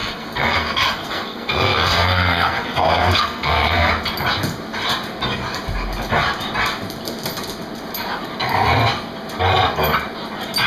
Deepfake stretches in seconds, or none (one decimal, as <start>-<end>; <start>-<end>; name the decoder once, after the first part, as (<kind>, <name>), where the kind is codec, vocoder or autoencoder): 0.0-3.9 (codec, SNAC)